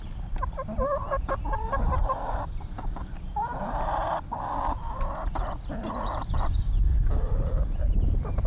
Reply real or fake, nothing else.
fake